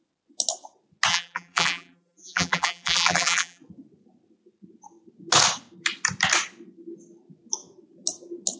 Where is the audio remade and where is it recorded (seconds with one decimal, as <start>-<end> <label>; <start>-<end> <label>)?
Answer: 0.0-1.1 recorded; 1.1-3.6 remade; 3.6-8.6 recorded

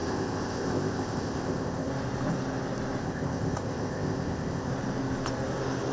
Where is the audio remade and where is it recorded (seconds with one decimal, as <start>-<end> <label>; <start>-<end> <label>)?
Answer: 0.0-1.9 remade; 1.9-3.0 recorded; 3.0-4.7 remade; 4.7-5.9 recorded

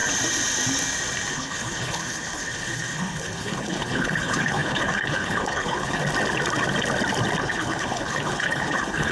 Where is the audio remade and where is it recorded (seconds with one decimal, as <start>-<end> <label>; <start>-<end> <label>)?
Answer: 0.0-1.3 recorded; 1.3-6.0 remade; 6.0-7.4 recorded; 7.4-9.1 remade

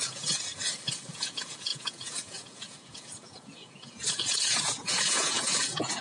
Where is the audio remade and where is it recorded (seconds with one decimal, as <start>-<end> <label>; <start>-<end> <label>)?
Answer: 0.0-0.5 remade; 0.5-1.1 recorded; 1.1-6.0 remade

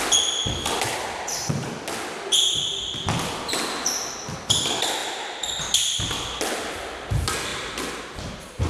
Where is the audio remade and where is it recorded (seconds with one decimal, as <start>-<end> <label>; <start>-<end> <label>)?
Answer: 0.0-8.7 recorded

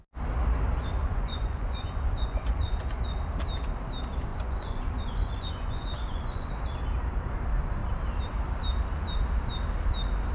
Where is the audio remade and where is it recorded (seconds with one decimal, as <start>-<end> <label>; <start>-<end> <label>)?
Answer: 0.0-1.0 recorded; 1.0-3.0 remade; 3.0-4.3 recorded; 4.3-6.5 remade; 6.5-10.3 recorded

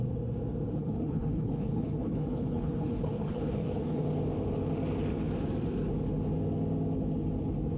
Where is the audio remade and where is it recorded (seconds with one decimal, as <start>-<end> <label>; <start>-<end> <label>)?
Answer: 0.0-0.8 recorded; 0.8-4.0 remade; 4.0-7.8 recorded